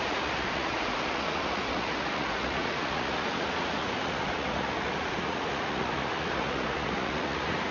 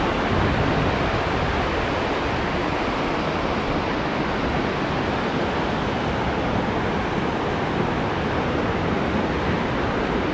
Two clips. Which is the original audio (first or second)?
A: second